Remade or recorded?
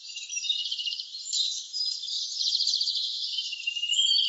remade